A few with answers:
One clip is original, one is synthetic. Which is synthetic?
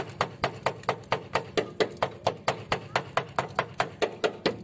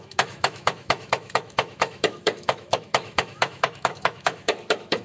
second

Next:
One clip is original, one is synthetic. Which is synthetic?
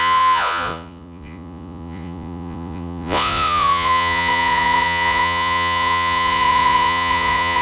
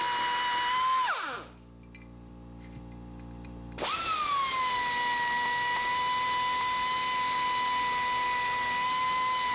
first